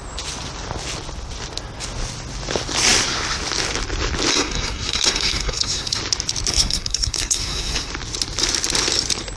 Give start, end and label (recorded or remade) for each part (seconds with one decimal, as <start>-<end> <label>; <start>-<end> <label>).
0.0-4.3 recorded; 4.3-6.0 remade; 6.0-6.5 recorded; 6.5-7.9 remade; 7.9-9.4 recorded